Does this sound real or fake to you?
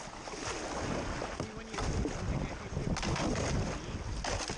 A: real